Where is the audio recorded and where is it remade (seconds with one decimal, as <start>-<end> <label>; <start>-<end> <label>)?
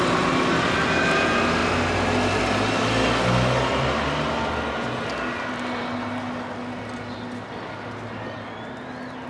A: 0.0-9.3 recorded